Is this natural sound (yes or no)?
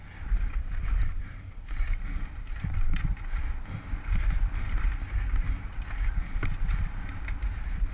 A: yes